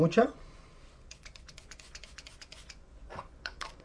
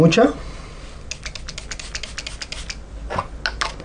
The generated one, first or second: first